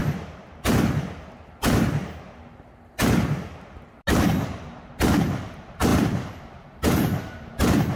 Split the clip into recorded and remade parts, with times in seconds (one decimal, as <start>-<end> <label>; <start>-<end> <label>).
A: 0.0-5.9 recorded; 5.9-7.5 remade; 7.5-8.0 recorded